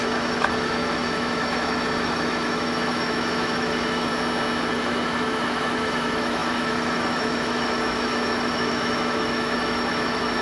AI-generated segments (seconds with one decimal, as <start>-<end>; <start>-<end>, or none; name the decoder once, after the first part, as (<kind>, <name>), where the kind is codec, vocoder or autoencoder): 0.0-4.1 (autoencoder, DAC-VAE); 4.7-10.4